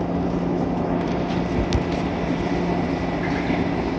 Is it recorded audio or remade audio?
recorded